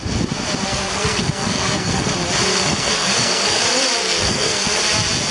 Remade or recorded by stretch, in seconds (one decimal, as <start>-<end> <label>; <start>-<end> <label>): 0.0-0.7 recorded; 0.7-2.1 remade; 2.1-2.5 recorded; 2.5-3.6 remade; 3.6-4.0 recorded; 4.0-4.8 remade; 4.8-5.3 recorded